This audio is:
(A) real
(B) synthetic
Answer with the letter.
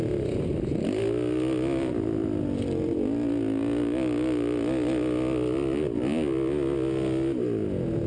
A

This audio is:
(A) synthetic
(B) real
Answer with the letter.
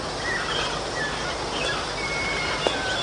B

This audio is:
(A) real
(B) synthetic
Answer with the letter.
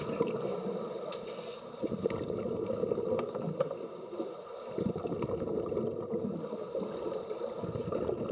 A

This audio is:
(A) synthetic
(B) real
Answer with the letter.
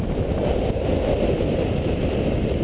B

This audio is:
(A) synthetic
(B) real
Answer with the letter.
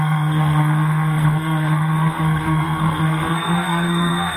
A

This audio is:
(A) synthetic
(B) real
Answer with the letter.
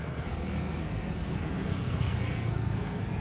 A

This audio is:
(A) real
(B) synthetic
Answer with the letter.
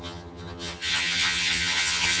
B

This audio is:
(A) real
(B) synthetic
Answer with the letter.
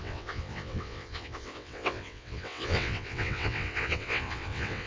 B